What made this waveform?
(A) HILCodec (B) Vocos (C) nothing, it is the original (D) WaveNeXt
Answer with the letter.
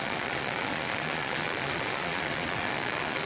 B